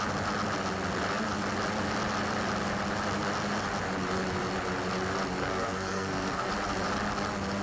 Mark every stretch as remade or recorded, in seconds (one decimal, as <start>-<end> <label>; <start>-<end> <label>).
0.0-5.4 recorded; 5.4-6.5 remade; 6.5-7.6 recorded